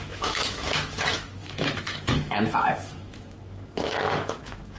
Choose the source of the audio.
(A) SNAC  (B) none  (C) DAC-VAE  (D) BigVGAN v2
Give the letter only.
C